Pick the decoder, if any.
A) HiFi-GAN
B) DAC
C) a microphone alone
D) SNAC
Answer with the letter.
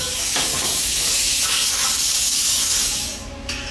B